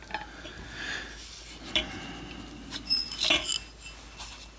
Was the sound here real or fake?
real